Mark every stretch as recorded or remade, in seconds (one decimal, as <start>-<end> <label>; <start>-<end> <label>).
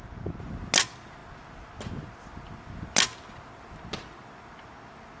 0.0-5.2 recorded